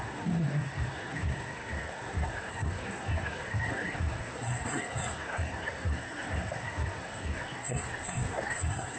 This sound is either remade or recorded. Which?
remade